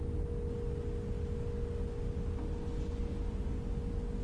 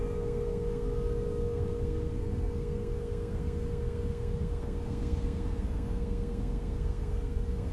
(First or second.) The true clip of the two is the first